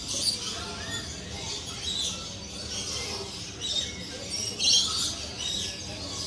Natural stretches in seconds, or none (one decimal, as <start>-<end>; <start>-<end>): 0.0-6.3